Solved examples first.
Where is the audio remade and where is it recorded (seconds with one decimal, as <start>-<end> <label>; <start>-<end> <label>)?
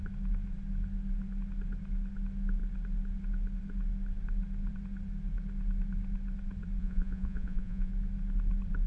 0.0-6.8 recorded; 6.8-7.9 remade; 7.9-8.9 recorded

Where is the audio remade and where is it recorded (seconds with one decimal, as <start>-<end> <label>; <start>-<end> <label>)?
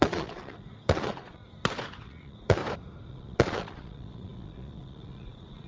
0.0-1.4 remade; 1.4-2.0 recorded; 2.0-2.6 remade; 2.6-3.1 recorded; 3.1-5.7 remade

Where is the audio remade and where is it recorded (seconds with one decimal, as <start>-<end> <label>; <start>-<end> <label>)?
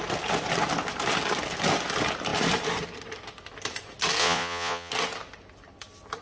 0.0-4.2 recorded; 4.2-4.9 remade; 4.9-6.2 recorded